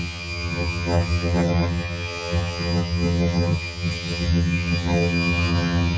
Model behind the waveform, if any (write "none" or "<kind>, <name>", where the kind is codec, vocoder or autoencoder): vocoder, HiFi-GAN